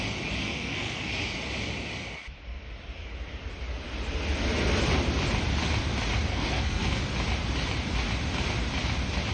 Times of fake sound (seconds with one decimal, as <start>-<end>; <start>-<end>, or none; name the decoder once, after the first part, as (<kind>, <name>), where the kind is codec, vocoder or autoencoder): 0.4-1.1 (codec, SNAC); 6.3-7.0